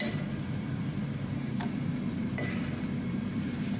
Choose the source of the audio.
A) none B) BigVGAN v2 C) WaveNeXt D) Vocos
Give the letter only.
B